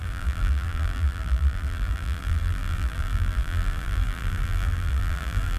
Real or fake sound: fake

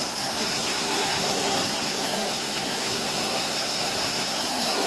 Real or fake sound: fake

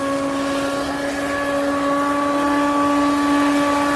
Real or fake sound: real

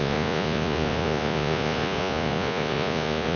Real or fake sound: fake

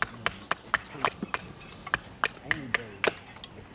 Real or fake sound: real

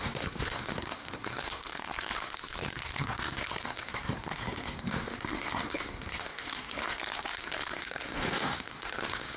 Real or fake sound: fake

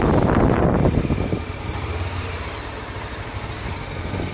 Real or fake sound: real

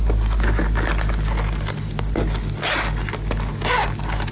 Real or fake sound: real